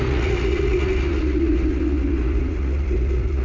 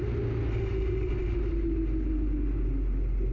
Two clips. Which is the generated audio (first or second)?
first